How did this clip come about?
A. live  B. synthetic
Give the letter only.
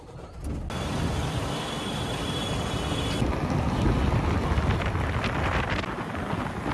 A